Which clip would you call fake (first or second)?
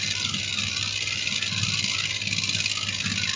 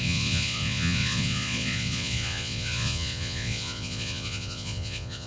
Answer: second